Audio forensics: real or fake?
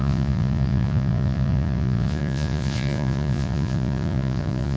fake